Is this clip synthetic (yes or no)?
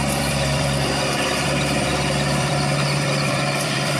yes